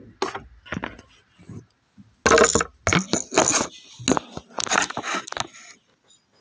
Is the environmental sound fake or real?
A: real